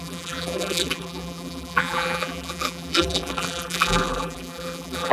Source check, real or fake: fake